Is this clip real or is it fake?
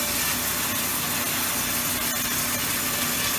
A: real